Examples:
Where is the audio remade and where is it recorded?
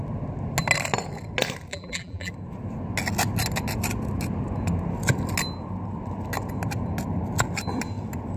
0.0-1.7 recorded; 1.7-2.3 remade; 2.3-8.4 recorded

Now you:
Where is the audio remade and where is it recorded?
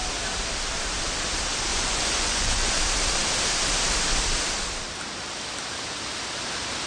0.0-1.7 recorded; 1.7-2.8 remade; 2.8-6.9 recorded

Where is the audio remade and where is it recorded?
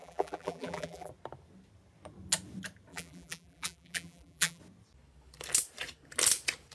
0.0-1.1 remade; 1.1-2.9 recorded; 2.9-4.6 remade; 4.6-6.7 recorded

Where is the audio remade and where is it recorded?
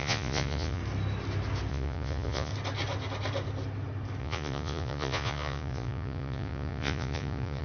0.0-0.8 remade; 0.8-1.7 recorded; 1.7-2.5 remade; 2.5-4.2 recorded; 4.2-7.6 remade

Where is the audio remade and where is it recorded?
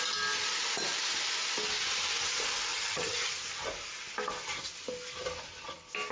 0.0-2.7 recorded; 2.7-3.3 remade; 3.3-6.1 recorded